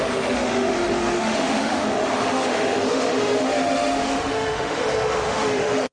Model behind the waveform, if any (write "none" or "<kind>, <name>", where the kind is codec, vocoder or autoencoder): autoencoder, DAC-VAE